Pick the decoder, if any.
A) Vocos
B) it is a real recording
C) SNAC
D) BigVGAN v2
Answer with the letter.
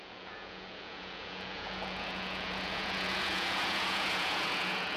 A